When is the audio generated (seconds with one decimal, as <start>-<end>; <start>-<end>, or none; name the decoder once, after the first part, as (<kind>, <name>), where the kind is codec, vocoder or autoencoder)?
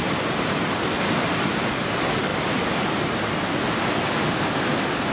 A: 0.0-0.6 (vocoder, BigVGAN v2)